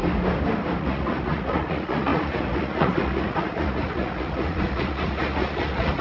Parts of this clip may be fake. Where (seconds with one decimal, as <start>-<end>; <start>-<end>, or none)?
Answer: 0.8-6.0